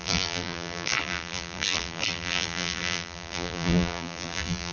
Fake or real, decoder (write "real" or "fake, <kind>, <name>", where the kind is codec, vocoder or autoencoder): fake, vocoder, BigVGAN v2